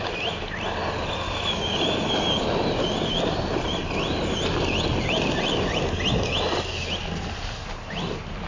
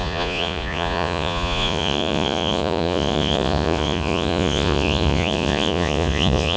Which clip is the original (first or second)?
first